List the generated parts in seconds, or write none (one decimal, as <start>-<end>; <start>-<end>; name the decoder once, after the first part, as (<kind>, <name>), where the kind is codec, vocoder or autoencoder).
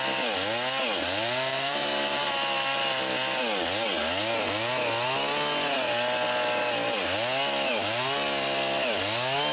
1.5-2.3 (vocoder, BigVGAN v2)